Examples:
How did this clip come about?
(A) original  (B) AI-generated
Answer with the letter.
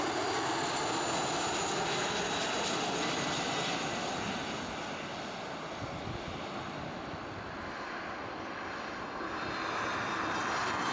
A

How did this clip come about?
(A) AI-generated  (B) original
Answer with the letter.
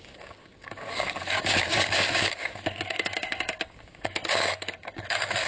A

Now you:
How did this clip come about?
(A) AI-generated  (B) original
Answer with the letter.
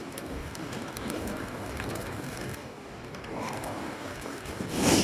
A